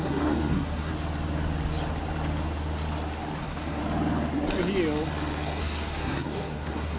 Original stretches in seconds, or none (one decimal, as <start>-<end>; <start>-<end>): 0.9-3.4; 3.8-5.6